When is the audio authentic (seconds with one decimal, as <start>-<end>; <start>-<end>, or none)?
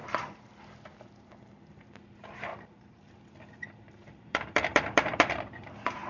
0.5-2.5; 3.1-3.6; 5.4-6.1